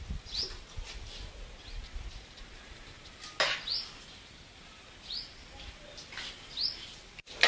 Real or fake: real